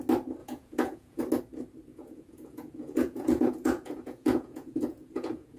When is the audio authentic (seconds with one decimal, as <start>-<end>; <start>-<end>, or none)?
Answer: 0.0-0.4; 1.2-1.9

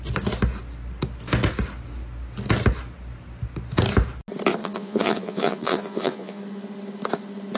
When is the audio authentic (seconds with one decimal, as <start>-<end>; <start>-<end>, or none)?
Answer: 0.0-4.6; 6.4-7.6

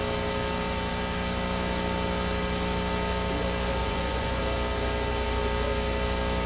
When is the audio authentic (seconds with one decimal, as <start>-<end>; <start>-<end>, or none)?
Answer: 0.0-3.8; 4.4-6.5

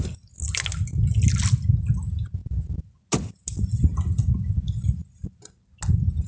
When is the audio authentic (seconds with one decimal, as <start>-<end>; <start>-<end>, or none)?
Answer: 0.0-6.3

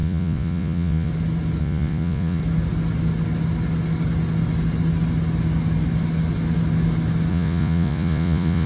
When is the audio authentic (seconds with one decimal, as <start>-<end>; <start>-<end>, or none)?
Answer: 1.1-1.6; 2.4-7.3

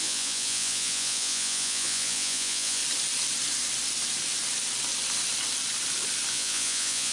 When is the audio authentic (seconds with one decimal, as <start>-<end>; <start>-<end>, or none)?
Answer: 2.8-6.3

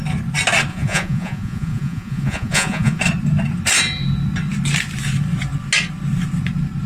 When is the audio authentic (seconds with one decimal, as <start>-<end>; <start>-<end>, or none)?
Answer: 0.0-0.7; 3.0-6.9